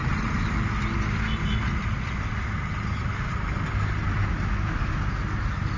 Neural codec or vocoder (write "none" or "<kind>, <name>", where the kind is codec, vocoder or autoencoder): none